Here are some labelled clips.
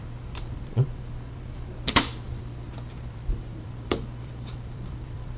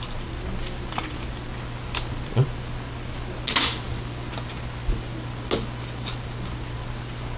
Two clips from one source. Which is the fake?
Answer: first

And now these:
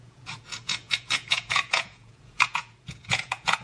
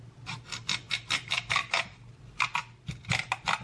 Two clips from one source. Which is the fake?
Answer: first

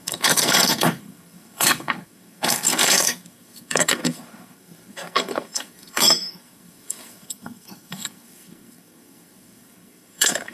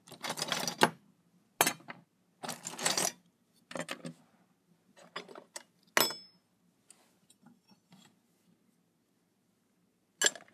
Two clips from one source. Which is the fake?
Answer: first